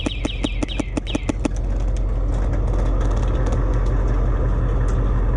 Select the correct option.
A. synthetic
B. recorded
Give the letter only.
B